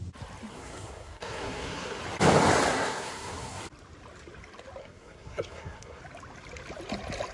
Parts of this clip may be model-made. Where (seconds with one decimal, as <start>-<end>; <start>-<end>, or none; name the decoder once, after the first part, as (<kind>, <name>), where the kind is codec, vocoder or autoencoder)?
0.5-2.0 (codec, SNAC); 2.7-3.6; 4.8-6.0